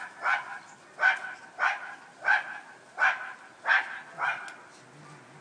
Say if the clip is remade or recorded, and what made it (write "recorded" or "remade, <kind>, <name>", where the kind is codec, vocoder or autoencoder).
recorded